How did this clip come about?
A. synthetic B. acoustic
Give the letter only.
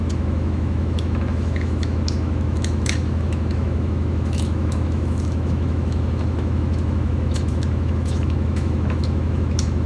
A